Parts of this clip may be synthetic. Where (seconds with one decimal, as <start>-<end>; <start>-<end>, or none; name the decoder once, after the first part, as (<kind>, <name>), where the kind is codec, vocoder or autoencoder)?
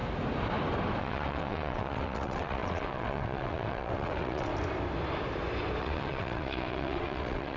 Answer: 1.0-4.5 (vocoder, WaveNeXt); 5.8-7.6